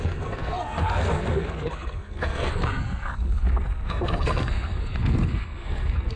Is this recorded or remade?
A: remade